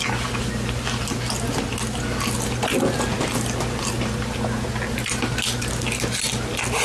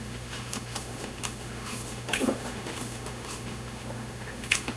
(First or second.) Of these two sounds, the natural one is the first